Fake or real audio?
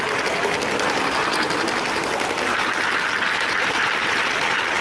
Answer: real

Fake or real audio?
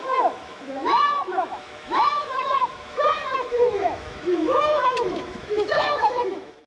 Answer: fake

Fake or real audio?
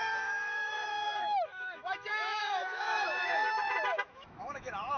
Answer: fake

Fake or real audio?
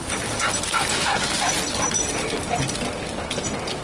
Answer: real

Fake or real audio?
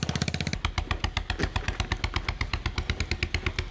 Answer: real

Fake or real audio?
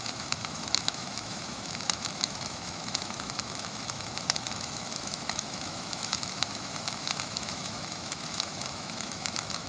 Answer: fake